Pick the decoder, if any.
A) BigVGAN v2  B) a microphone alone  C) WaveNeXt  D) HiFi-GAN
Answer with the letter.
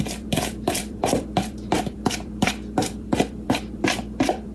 A